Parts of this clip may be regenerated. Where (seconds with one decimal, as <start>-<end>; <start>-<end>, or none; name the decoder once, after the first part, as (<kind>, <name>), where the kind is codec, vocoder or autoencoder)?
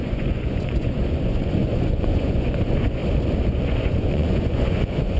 0.0-3.0 (vocoder, Vocos); 3.5-5.2